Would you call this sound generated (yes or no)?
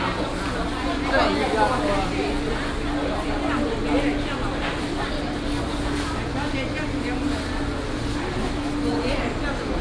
no